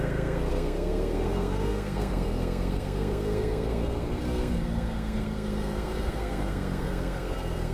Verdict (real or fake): fake